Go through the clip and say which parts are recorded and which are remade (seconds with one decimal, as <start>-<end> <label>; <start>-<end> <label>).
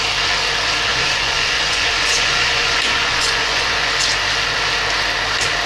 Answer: 0.0-0.9 recorded; 0.9-3.9 remade; 3.9-5.7 recorded